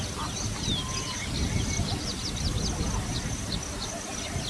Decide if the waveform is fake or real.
real